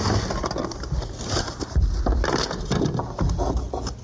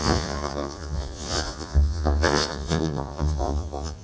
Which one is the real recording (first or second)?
first